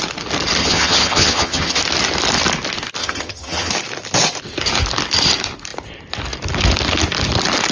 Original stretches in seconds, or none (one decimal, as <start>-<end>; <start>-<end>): 0.0-0.6; 1.8-3.0; 3.7-7.7